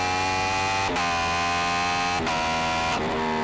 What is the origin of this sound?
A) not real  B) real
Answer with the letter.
B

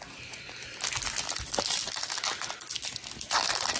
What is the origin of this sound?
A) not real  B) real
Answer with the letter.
B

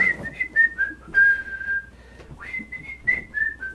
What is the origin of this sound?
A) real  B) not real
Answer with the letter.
A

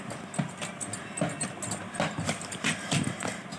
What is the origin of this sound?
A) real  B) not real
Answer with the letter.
A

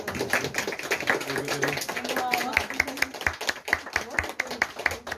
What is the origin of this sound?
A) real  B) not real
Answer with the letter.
A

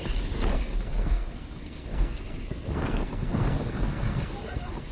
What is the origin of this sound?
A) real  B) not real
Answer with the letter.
B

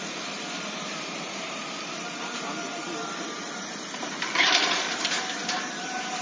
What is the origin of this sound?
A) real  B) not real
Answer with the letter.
B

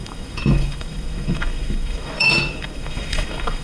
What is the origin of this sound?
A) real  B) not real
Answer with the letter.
B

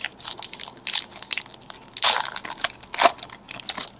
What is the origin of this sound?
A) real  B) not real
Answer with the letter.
A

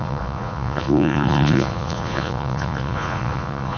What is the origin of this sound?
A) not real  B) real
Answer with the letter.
A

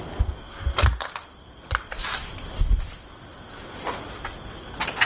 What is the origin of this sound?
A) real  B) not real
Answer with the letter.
A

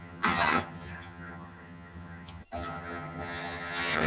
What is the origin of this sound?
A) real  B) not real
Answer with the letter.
B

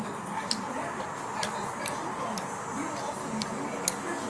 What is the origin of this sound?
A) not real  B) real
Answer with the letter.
B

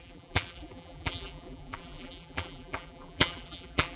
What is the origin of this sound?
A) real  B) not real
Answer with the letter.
B